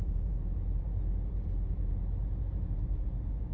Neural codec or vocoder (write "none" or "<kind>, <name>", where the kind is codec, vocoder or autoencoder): vocoder, BigVGAN v2